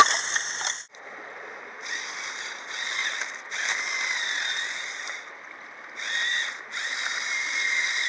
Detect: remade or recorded recorded